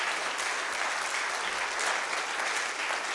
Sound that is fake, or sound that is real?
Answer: real